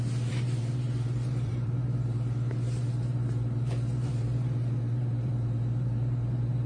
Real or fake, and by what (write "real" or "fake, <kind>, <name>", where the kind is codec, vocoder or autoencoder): fake, vocoder, BigVGAN v2